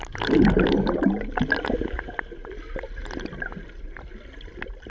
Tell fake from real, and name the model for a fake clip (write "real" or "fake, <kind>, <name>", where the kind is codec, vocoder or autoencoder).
real